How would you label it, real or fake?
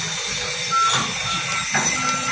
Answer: real